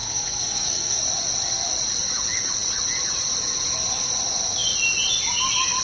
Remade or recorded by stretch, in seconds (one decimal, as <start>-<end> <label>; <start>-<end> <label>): 0.0-1.0 remade; 1.0-5.8 recorded